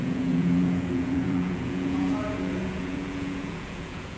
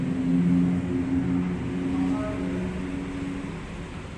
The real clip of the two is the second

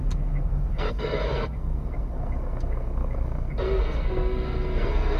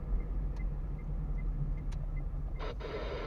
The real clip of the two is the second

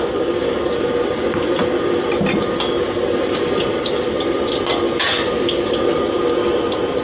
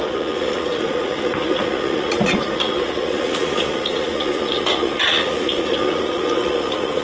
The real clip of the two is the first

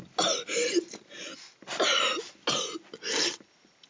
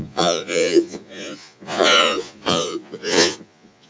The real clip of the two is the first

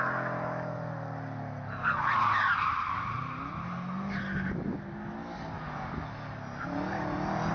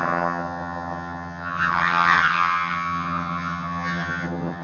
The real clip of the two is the first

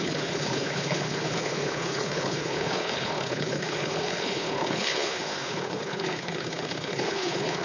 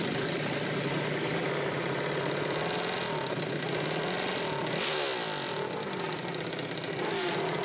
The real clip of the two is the second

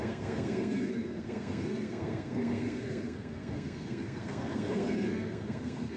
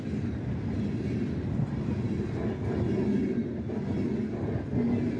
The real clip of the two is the second